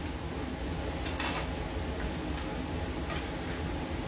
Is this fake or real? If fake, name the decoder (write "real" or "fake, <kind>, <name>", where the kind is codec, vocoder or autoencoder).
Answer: real